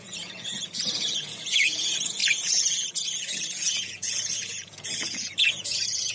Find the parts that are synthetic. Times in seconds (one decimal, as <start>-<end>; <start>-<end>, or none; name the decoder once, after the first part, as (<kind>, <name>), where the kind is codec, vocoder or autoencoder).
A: 0.0-6.1 (vocoder, Vocos)